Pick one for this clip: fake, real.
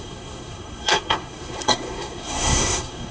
fake